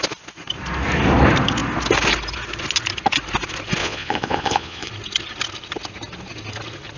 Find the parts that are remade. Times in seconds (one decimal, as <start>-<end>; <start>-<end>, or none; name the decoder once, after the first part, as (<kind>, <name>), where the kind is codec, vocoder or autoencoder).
3.8-4.9 (vocoder, Vocos)